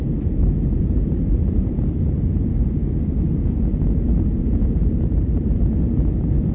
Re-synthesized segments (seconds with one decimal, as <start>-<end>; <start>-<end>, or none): 0.0-2.8; 3.7-6.5